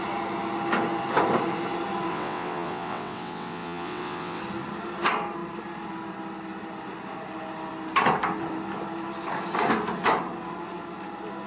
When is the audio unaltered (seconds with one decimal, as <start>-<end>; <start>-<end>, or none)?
0.0-2.1; 4.4-11.5